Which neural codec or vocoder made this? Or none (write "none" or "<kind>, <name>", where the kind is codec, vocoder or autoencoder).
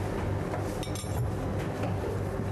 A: none